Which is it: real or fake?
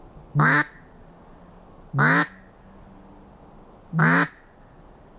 real